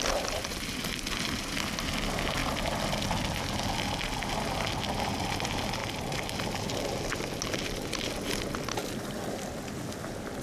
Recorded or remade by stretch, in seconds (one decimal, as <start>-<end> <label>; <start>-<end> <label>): 0.0-10.4 recorded